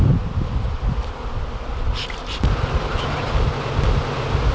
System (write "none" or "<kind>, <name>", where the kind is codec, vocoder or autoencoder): none